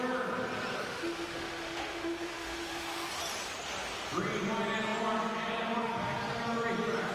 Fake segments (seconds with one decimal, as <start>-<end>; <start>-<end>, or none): 0.9-3.1